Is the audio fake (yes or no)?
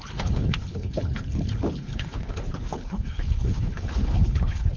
yes